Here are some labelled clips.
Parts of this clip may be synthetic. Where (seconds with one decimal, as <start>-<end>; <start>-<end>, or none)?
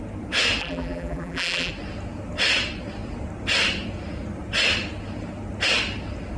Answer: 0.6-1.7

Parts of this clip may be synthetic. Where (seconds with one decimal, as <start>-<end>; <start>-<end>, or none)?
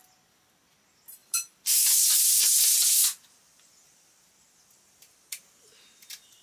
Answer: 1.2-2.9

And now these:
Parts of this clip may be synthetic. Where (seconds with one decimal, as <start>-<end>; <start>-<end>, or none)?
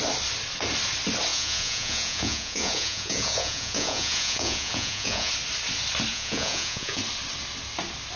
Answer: 1.3-5.3; 6.1-7.0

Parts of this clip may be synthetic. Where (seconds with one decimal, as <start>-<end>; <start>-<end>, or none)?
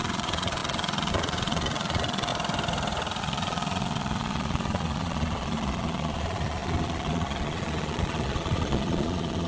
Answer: 0.0-2.3; 3.2-9.5